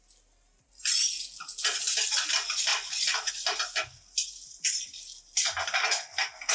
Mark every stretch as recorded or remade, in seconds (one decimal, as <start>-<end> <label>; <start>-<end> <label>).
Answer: 0.0-2.7 recorded; 2.7-3.3 remade; 3.3-6.5 recorded